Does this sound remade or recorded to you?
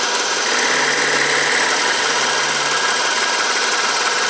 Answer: recorded